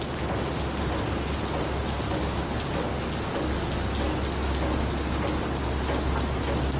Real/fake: real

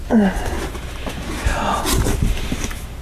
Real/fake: real